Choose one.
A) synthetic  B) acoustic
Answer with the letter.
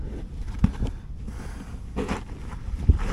B